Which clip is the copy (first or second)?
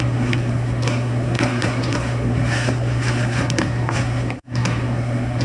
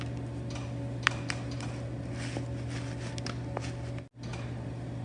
first